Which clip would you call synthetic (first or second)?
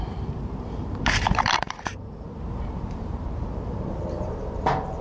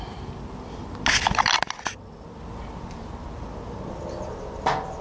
first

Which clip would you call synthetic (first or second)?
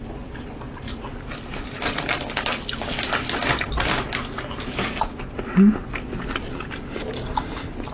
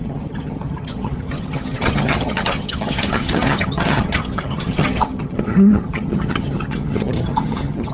second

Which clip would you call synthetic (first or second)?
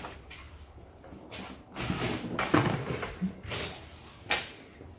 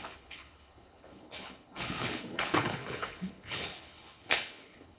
second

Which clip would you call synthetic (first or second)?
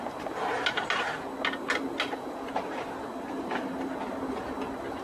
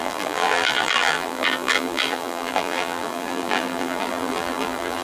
second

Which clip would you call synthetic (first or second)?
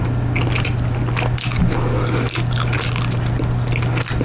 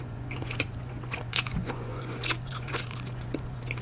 second